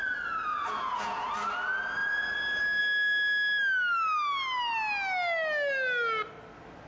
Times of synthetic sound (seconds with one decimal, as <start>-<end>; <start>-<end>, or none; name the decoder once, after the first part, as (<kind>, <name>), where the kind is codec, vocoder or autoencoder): 0.5-1.3 (vocoder, Vocos)